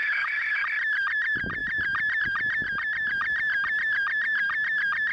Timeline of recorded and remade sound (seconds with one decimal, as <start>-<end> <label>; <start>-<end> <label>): 0.0-0.6 remade; 0.6-5.1 recorded